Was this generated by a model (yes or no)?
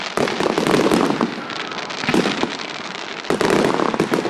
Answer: no